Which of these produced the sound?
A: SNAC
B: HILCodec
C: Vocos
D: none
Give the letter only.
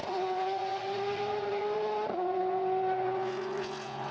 C